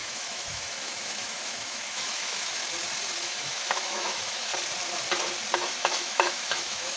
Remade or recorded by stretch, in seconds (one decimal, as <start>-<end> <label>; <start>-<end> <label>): 0.0-2.6 remade; 2.6-3.2 recorded; 3.2-4.5 remade; 4.5-5.8 recorded; 5.8-7.0 remade

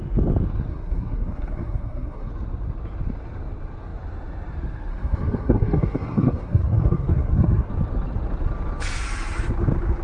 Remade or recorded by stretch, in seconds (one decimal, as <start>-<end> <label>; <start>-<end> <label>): 0.0-0.7 recorded; 0.7-2.3 remade; 2.3-4.9 recorded; 4.9-7.7 remade; 7.7-10.0 recorded

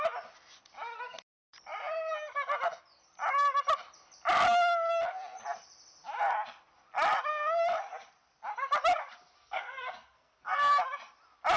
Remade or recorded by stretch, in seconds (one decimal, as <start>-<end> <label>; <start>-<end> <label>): 0.0-9.4 recorded; 9.4-10.8 remade; 10.8-11.6 recorded

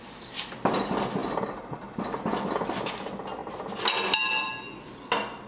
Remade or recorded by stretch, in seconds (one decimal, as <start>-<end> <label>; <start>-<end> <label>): 0.0-5.5 recorded

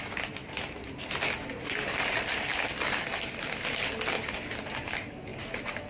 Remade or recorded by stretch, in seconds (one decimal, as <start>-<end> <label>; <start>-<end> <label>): 0.0-5.9 recorded

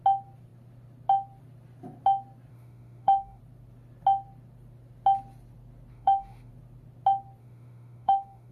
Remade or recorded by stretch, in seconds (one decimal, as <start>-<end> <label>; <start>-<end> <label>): 0.0-2.5 recorded; 2.5-3.4 remade; 3.4-5.9 recorded; 5.9-6.5 remade; 6.5-7.4 recorded; 7.4-8.5 remade